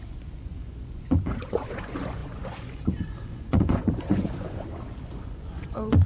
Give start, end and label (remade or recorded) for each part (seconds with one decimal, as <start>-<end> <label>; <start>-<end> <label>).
0.0-6.1 remade